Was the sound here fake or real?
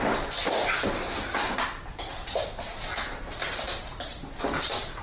real